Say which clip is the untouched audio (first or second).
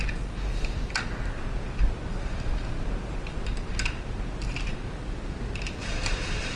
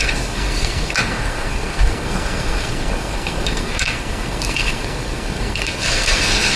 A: first